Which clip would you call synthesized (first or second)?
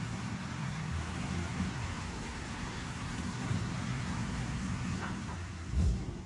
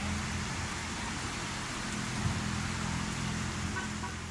first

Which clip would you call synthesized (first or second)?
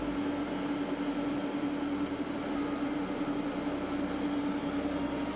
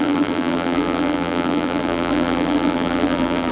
second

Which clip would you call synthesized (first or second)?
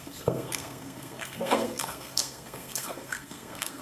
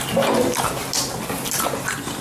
first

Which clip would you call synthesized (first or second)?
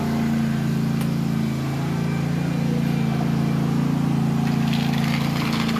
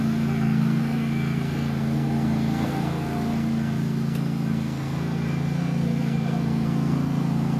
second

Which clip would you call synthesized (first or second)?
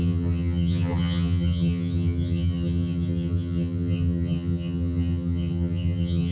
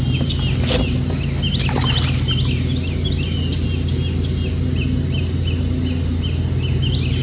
first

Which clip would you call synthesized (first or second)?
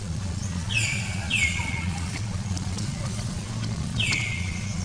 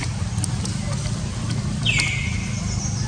first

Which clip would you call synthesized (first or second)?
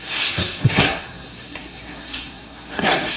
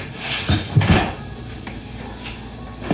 first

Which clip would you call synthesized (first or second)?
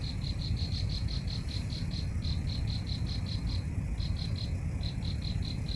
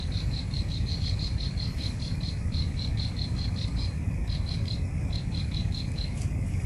second